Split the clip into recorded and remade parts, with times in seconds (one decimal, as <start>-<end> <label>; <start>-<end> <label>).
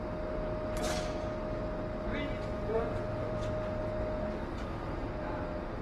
0.0-2.5 recorded; 2.5-3.4 remade; 3.4-5.8 recorded